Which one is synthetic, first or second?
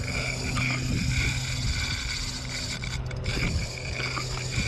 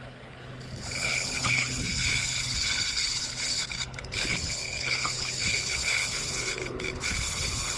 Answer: second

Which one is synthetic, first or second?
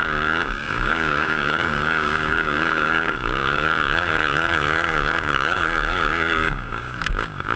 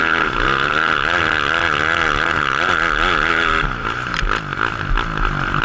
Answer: first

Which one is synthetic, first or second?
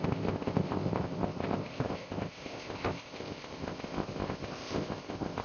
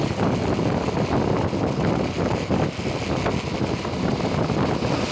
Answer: first